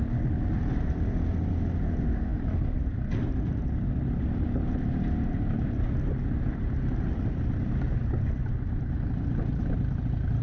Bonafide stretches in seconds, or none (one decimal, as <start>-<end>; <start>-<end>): 0.0-10.4